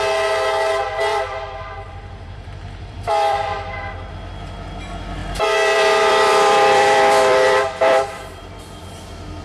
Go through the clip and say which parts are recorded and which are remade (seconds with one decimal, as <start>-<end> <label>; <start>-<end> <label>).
0.0-1.1 recorded; 1.1-4.1 remade; 4.1-5.2 recorded; 5.2-8.5 remade; 8.5-9.4 recorded